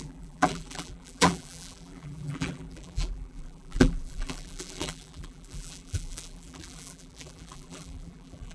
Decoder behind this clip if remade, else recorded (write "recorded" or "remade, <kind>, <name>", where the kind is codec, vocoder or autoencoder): remade, vocoder, BigVGAN v2